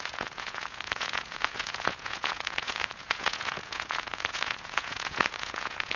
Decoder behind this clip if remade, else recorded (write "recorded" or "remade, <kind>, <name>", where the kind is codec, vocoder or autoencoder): remade, vocoder, Vocos